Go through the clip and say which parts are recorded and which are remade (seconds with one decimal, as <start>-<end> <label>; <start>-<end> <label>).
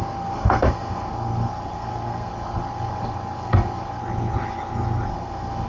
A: 0.0-4.0 remade; 4.0-5.1 recorded; 5.1-5.7 remade